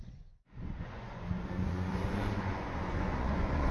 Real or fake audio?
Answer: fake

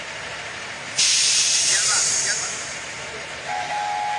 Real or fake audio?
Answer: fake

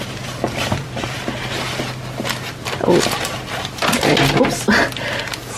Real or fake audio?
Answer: real